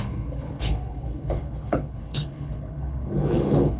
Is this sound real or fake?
fake